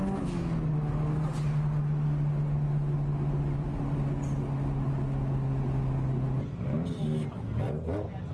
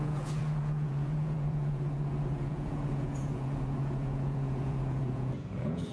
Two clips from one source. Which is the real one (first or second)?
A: first